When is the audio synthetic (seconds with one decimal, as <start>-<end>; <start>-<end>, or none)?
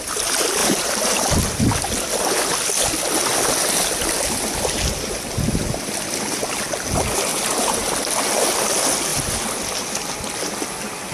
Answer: 0.6-1.6; 7.3-7.9